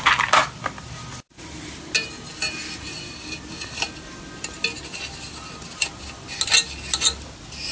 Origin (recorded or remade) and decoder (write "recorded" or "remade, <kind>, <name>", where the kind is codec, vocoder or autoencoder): recorded